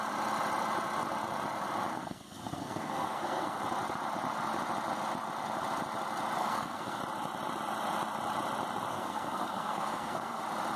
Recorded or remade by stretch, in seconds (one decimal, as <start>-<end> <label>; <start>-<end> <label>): 0.0-1.9 recorded; 1.9-3.6 remade; 3.6-6.4 recorded; 6.4-7.0 remade; 7.0-8.9 recorded; 8.9-10.4 remade; 10.4-10.8 recorded